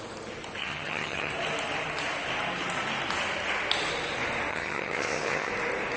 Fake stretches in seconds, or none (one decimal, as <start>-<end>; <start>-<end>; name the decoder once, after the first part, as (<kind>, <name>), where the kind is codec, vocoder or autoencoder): 0.6-1.3 (vocoder, HiFi-GAN); 4.5-5.5